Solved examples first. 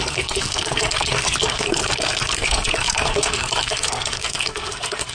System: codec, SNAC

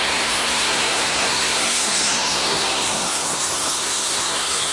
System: codec, SNAC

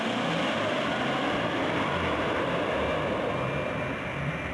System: none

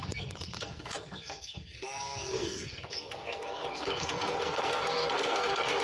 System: codec, SNAC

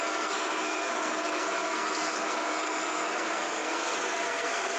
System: codec, SNAC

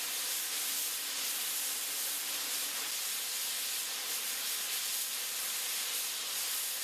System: none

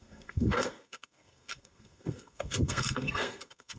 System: codec, SNAC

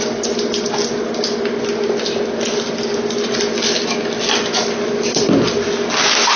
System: none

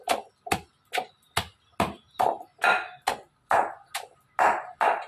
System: none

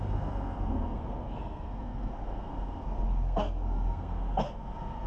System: codec, SNAC